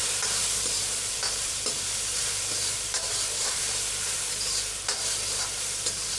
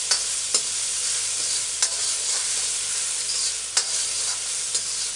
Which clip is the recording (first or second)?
second